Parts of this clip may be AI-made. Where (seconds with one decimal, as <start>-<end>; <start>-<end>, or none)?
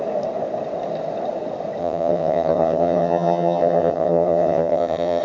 1.8-5.2